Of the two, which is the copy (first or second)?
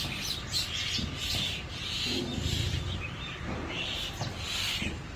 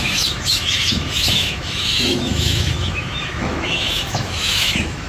second